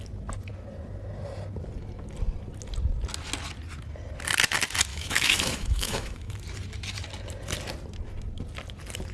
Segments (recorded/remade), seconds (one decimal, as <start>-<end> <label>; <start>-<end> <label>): 0.0-4.9 recorded; 4.9-6.3 remade; 6.3-9.1 recorded